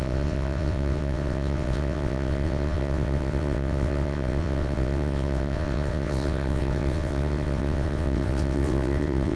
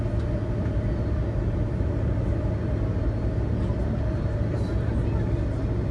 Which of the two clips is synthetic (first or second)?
first